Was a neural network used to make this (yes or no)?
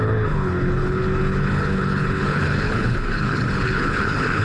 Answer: yes